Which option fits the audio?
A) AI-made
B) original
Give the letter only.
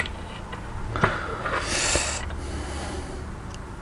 B